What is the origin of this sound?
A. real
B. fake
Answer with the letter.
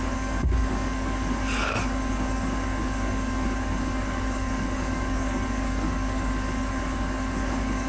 B